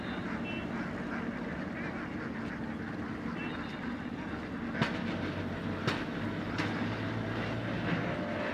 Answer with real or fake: real